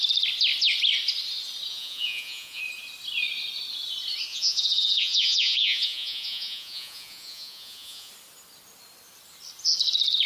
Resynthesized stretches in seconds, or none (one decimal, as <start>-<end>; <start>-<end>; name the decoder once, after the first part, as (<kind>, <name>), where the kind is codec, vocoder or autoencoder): 1.7-2.6 (vocoder, Vocos); 4.3-8.1